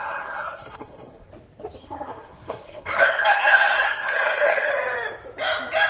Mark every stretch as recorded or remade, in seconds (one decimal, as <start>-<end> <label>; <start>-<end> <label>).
0.0-1.3 remade; 1.3-1.8 recorded; 1.8-4.7 remade; 4.7-5.9 recorded